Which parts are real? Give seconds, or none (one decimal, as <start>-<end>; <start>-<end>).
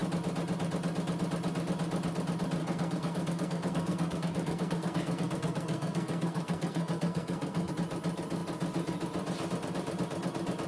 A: 0.0-2.6; 7.7-10.7